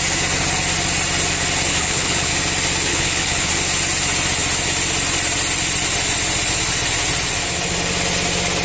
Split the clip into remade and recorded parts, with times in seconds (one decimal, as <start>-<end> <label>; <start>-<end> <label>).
0.0-1.7 recorded; 1.7-2.3 remade; 2.3-2.9 recorded; 2.9-3.5 remade; 3.5-8.6 recorded